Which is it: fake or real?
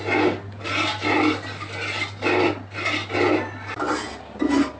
real